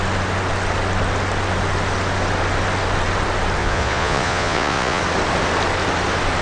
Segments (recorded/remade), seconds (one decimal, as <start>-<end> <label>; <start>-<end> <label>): 0.0-3.6 recorded; 3.6-5.0 remade; 5.0-6.4 recorded